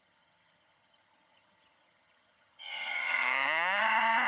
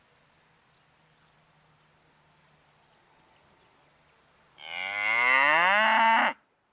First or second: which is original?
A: second